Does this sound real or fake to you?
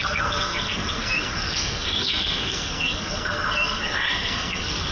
fake